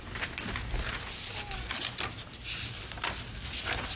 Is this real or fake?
real